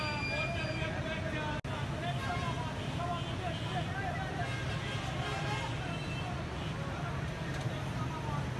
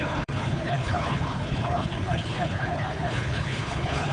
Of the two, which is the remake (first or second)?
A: second